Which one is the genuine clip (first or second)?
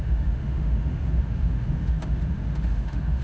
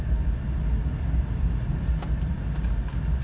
second